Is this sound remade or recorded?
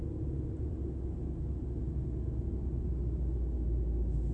recorded